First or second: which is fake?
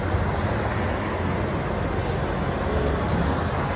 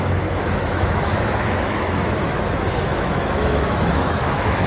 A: second